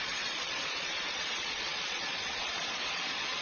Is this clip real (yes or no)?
no